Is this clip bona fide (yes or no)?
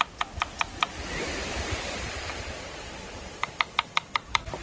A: yes